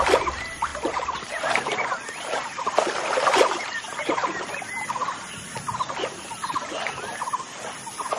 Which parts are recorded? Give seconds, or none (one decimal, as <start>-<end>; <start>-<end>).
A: 0.0-0.7; 2.6-8.2